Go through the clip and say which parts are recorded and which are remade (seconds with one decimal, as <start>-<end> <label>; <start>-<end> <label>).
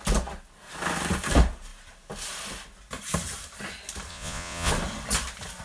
0.0-4.1 recorded; 4.1-4.7 remade; 4.7-5.6 recorded